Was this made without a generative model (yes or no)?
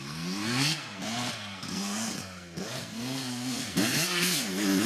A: no